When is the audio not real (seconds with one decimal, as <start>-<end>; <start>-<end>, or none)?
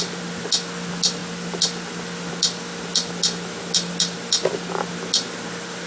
none